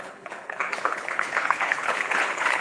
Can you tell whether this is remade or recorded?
remade